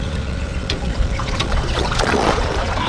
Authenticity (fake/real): fake